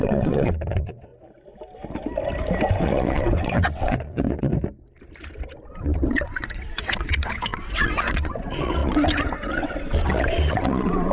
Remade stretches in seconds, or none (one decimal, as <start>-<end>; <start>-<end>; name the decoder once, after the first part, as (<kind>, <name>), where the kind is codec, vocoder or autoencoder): 0.0-1.1 (vocoder, WaveNeXt); 2.8-4.5; 5.7-11.1